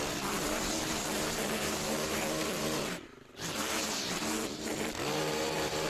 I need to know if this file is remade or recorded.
remade